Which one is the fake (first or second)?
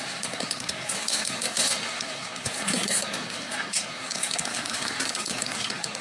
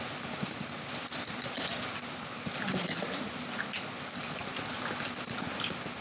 first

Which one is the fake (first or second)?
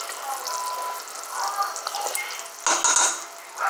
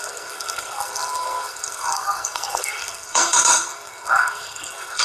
second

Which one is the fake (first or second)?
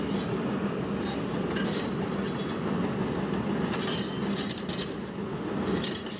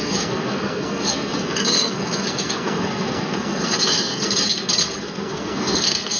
second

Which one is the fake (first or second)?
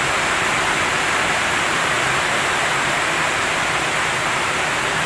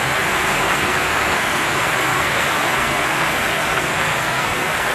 second